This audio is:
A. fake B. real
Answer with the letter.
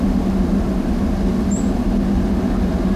B